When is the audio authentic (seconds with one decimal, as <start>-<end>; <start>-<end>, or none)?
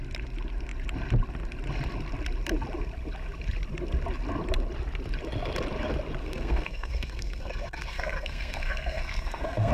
0.0-6.2